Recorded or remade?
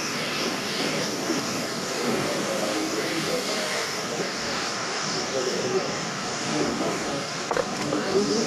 remade